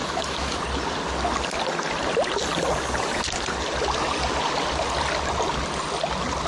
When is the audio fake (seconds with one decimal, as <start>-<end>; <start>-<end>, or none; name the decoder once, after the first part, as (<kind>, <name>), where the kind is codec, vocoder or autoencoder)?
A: 0.0-0.6 (autoencoder, DAC-VAE)

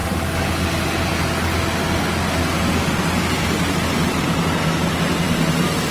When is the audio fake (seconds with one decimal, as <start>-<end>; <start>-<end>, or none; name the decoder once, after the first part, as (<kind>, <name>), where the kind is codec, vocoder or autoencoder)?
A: none

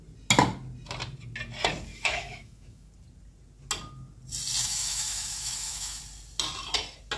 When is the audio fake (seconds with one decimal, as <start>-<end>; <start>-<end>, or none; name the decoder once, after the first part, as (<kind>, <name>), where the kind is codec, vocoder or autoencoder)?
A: 1.9-2.9 (autoencoder, DAC-VAE); 4.6-6.0

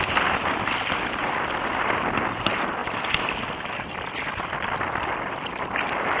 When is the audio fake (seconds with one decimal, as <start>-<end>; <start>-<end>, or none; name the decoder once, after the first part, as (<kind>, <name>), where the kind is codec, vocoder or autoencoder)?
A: none

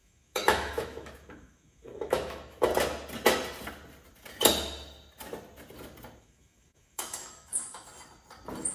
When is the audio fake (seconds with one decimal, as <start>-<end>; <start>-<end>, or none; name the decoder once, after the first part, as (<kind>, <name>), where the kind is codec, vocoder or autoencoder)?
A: 0.0-2.7 (autoencoder, DAC-VAE); 6.2-7.9